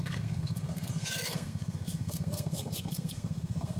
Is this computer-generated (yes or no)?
yes